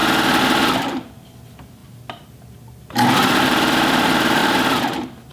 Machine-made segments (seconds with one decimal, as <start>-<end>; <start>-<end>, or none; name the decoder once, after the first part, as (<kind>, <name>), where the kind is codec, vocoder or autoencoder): 0.6-1.8 (vocoder, BigVGAN v2); 3.3-5.3

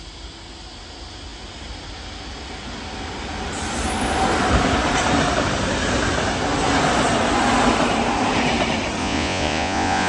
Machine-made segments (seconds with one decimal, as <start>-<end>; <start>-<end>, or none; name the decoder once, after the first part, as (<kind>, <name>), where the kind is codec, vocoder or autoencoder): 9.0-10.1 (vocoder, Vocos)

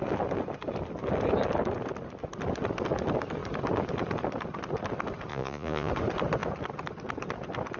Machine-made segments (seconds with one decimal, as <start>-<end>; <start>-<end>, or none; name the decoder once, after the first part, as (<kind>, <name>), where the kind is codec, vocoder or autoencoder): 5.3-5.9 (vocoder, Vocos)

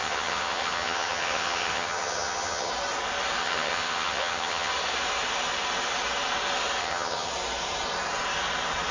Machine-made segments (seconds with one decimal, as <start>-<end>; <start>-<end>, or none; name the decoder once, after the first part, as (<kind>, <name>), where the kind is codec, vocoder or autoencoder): 0.0-2.7 (vocoder, HiFi-GAN); 3.4-4.7; 6.8-7.3

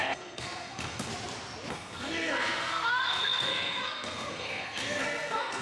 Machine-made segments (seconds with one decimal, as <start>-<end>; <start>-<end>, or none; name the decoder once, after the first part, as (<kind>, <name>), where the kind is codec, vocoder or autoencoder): 0.0-1.1 (codec, SNAC); 1.7-5.6

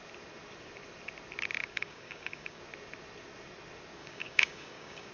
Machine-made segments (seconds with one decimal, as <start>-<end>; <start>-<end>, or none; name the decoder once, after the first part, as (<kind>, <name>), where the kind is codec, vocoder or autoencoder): 1.6-2.6 (codec, DAC); 4.0-5.1

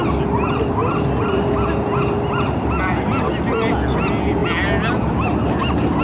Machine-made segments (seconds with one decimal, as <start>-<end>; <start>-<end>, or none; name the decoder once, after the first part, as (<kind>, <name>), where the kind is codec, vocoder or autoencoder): none